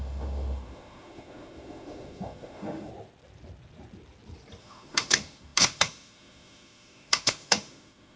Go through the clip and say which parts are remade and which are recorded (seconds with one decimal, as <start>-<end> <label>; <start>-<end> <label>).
0.0-2.9 remade; 2.9-4.6 recorded; 4.6-8.2 remade